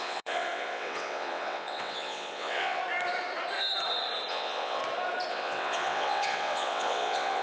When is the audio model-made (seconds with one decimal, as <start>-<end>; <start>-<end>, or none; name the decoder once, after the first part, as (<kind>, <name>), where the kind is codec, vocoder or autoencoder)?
0.0-2.8 (vocoder, WaveNeXt); 4.3-4.8; 5.3-7.4